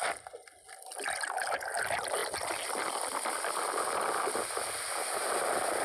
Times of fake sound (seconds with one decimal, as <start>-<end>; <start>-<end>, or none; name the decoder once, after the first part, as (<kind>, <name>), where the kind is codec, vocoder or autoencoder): none